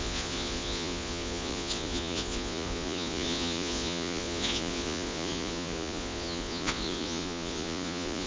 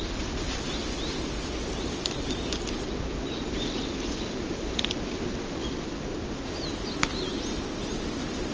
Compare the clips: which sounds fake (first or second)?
first